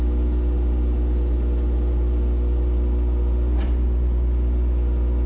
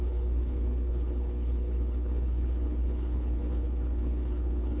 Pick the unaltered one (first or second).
first